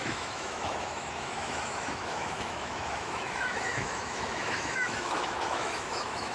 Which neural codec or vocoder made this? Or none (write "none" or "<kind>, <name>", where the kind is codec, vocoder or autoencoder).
autoencoder, DAC-VAE